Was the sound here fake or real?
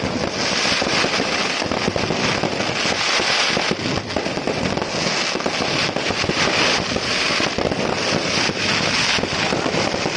real